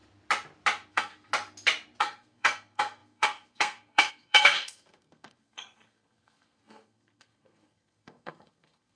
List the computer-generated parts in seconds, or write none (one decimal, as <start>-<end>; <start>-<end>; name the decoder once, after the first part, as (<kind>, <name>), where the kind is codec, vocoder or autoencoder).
0.9-1.3 (codec, SNAC); 2.0-9.0